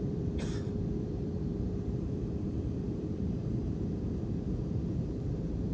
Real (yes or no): no